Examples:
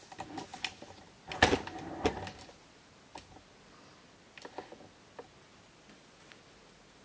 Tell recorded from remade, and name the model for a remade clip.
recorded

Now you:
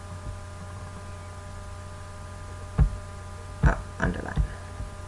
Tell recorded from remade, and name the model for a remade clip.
recorded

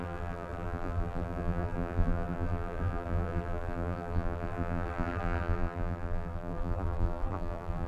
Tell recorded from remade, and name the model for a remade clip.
remade, vocoder, BigVGAN v2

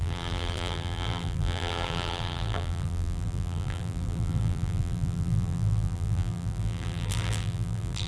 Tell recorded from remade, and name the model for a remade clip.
remade, vocoder, BigVGAN v2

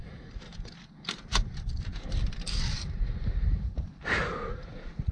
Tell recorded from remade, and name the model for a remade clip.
remade, vocoder, BigVGAN v2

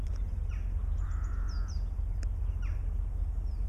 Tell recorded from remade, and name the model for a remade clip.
recorded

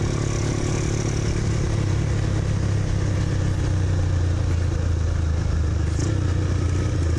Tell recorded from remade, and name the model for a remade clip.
recorded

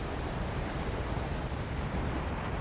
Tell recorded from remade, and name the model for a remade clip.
remade, vocoder, BigVGAN v2